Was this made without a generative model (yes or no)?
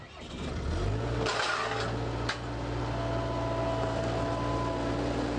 yes